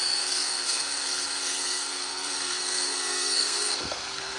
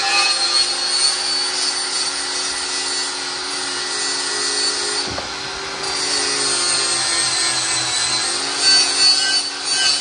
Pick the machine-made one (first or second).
first